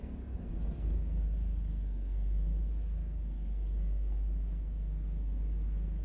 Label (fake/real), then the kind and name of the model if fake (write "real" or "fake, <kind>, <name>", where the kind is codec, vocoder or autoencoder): fake, codec, SNAC